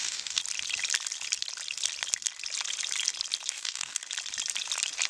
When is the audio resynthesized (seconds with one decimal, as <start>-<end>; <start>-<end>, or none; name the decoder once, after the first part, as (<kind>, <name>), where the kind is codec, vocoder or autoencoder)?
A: 0.0-0.4 (codec, DAC); 3.5-4.0